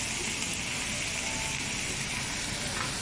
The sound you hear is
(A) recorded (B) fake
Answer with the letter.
A